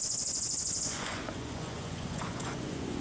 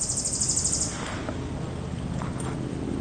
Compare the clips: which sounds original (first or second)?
second